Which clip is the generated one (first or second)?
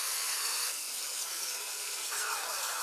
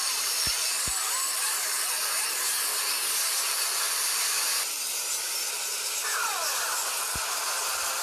first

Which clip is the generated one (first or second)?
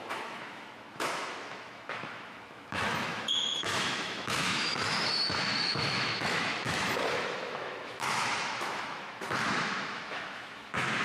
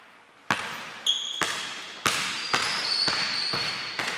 first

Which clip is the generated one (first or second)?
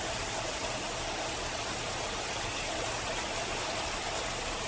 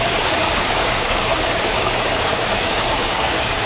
second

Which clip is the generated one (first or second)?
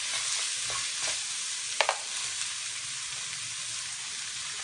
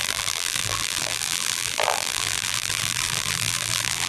second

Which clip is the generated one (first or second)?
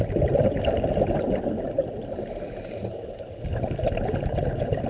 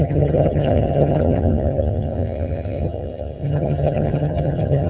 second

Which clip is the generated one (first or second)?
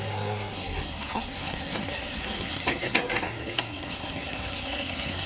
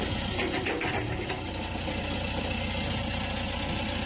first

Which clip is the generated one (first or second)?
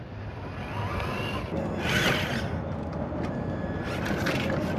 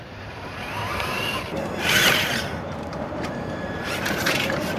second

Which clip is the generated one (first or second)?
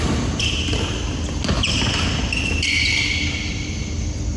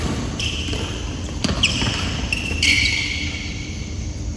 second